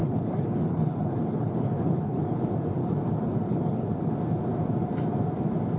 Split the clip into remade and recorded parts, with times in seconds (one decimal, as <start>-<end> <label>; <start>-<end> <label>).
0.0-2.4 remade; 2.4-2.8 recorded; 2.8-3.9 remade; 3.9-5.8 recorded